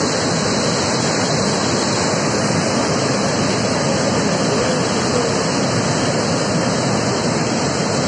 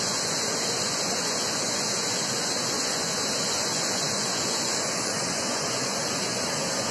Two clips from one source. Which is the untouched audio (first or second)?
first